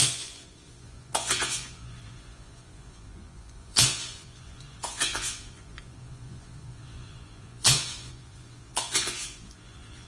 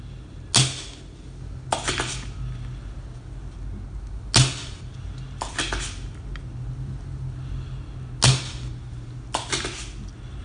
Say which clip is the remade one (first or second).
first